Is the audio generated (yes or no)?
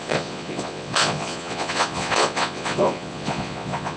yes